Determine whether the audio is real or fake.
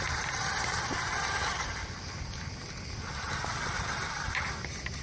real